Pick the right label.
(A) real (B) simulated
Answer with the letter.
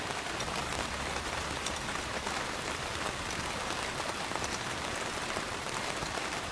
B